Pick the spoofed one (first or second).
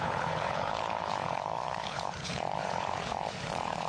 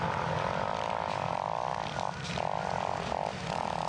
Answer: first